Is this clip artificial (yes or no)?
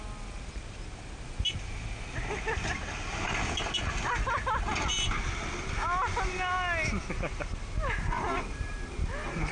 no